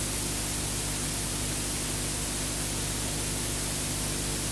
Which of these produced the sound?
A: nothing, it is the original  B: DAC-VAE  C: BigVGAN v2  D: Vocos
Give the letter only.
A